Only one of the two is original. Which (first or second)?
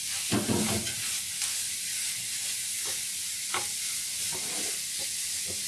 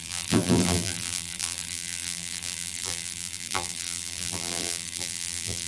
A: first